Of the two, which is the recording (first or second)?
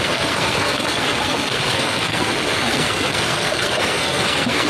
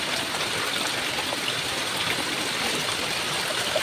second